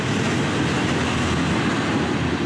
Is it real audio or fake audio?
real